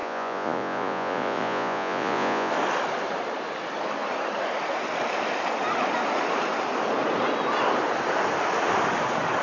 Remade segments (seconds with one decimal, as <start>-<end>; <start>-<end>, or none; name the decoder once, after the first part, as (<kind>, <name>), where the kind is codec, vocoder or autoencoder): 0.0-2.5 (vocoder, Vocos)